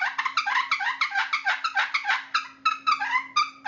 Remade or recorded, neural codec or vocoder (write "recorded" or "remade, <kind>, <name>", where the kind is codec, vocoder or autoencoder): recorded